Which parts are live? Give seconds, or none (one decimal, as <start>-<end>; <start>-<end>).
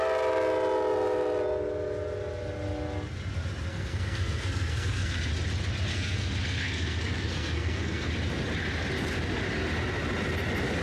0.0-3.7; 5.3-5.9; 8.1-10.8